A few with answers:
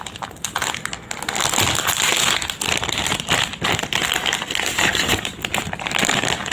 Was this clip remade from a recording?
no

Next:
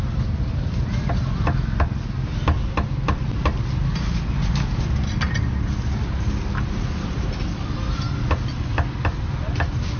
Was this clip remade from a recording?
no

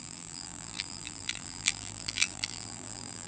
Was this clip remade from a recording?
yes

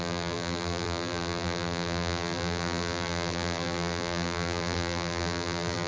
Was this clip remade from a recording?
yes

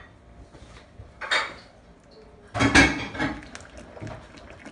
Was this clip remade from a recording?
no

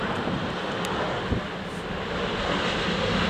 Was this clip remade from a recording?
no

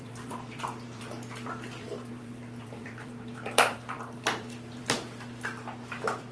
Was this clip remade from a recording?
yes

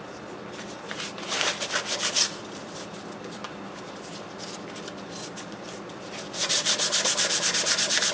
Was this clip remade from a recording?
yes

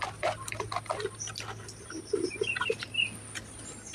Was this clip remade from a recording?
no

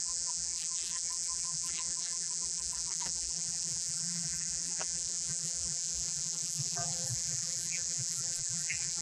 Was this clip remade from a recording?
yes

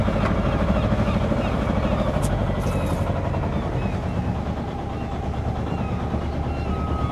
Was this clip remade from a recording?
no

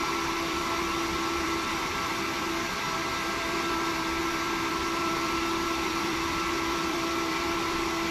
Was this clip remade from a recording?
yes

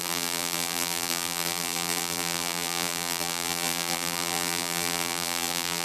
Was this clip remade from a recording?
yes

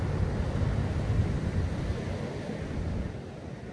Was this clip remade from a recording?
no